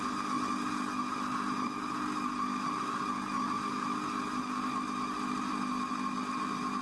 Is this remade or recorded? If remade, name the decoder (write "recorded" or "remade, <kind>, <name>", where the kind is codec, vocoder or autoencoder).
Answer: recorded